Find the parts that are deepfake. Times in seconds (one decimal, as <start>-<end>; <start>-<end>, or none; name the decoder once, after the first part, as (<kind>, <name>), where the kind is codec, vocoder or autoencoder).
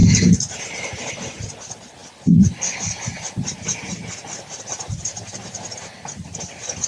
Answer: none